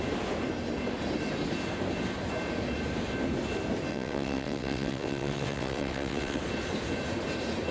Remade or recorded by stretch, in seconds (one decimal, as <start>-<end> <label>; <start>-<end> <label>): 0.0-3.9 recorded; 3.9-6.4 remade; 6.4-7.7 recorded